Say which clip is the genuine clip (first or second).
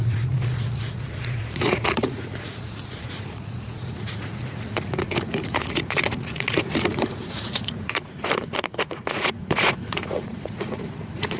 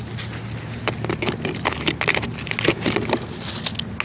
second